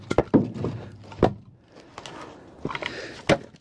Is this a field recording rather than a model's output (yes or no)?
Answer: yes